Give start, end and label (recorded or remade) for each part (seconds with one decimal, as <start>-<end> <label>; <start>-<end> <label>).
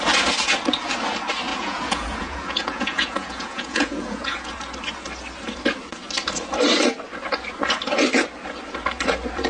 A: 0.0-1.5 recorded; 1.5-4.5 remade; 4.5-9.5 recorded